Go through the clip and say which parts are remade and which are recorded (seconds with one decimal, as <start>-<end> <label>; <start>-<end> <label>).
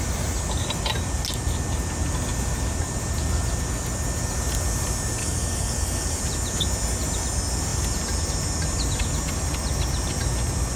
0.0-5.2 recorded; 5.2-6.2 remade; 6.2-10.8 recorded